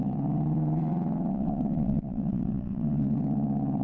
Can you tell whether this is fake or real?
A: fake